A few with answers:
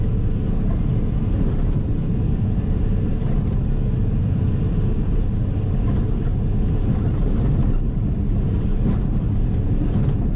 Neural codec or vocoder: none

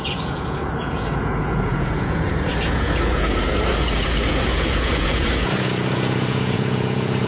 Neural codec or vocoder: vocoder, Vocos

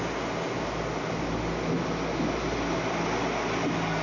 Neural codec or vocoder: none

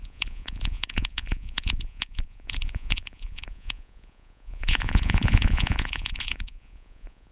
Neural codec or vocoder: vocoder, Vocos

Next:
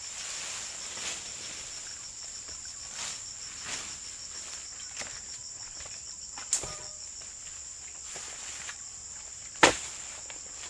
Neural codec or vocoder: vocoder, BigVGAN v2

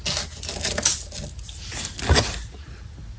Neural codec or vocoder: none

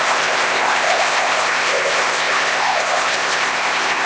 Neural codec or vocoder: codec, ZipCodec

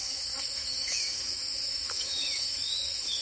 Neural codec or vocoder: autoencoder, DAC-VAE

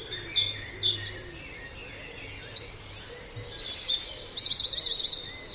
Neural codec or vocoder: none